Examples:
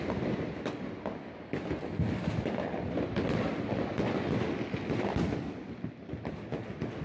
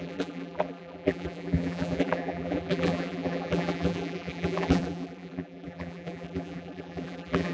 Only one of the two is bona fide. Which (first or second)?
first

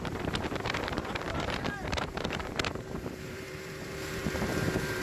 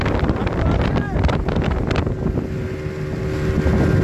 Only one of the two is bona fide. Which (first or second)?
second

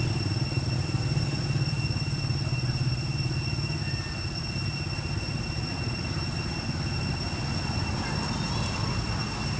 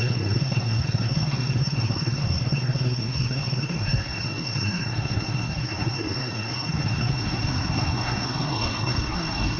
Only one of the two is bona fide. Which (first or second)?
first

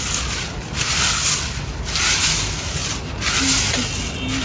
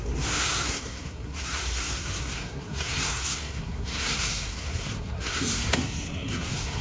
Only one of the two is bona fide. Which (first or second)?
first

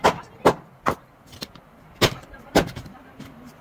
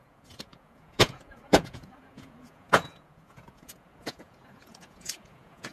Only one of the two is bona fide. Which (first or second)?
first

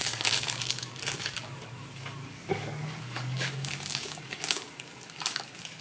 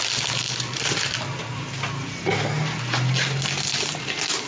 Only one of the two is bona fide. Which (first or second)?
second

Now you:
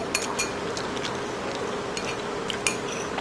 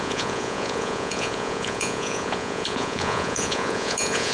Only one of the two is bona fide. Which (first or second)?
first